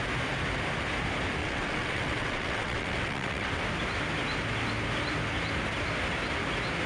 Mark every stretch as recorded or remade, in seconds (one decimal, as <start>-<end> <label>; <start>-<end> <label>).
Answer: 0.0-1.4 recorded; 1.4-3.5 remade; 3.5-6.9 recorded